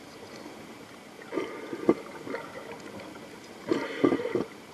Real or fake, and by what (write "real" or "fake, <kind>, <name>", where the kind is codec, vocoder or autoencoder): real